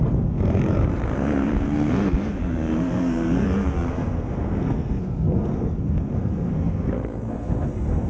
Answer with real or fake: fake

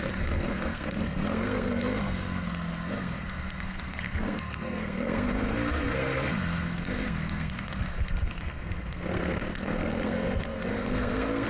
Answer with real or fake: fake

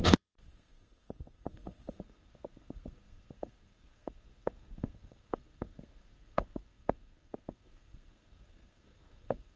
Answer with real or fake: fake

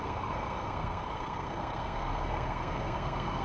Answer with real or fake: fake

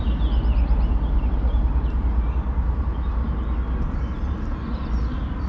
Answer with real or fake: real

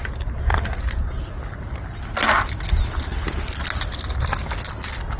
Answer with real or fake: real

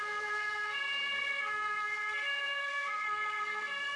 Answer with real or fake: fake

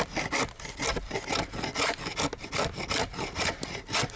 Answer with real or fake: real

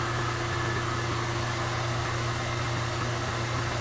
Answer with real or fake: real